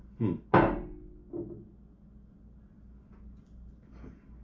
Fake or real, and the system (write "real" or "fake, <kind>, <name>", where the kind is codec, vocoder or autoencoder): real